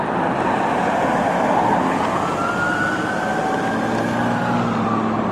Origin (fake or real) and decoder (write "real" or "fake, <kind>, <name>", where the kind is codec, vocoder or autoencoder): real